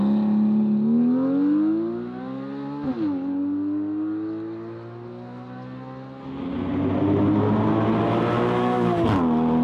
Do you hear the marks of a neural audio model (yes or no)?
no